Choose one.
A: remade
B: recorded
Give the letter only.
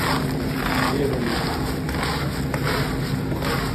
B